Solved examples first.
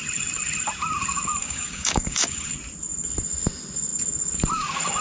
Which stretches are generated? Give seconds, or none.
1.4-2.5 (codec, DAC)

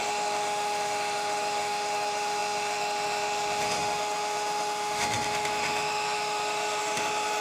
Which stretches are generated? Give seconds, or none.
0.0-7.4 (autoencoder, DAC-VAE)

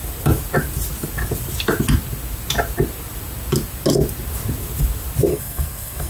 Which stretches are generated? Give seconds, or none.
5.3-6.1 (codec, SNAC)

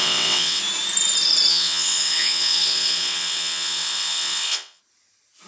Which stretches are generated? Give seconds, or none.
0.0-0.6 (vocoder, WaveNeXt); 1.5-4.8

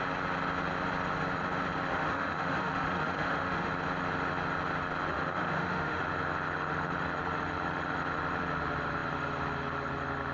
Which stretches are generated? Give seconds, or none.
1.9-3.7 (autoencoder, DAC-VAE); 5.1-6.0